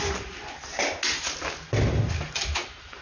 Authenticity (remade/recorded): recorded